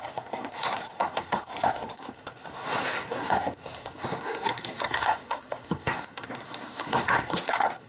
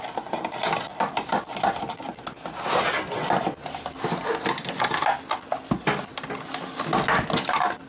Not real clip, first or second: first